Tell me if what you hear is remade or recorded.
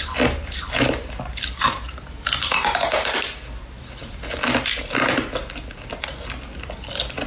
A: recorded